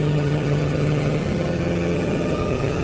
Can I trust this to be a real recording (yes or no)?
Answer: no